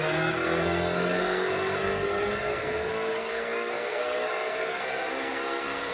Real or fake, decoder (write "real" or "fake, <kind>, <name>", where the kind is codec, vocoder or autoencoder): fake, codec, SNAC